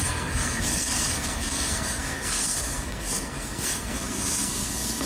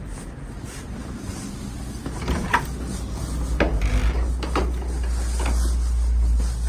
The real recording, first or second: second